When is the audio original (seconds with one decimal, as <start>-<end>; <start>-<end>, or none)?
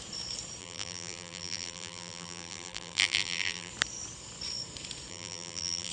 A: 0.0-0.6; 3.7-5.1